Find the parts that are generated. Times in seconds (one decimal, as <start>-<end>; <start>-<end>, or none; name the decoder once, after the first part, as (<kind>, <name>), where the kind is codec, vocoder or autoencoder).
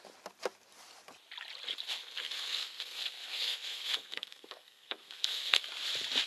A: 2.0-5.6 (codec, SNAC)